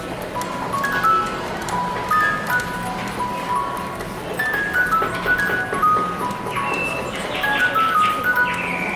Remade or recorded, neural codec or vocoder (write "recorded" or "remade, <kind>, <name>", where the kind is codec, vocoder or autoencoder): recorded